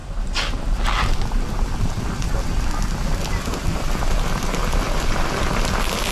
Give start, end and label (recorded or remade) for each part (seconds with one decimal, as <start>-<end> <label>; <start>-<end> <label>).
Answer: 0.0-2.0 remade; 2.0-3.0 recorded; 3.0-3.9 remade; 3.9-6.1 recorded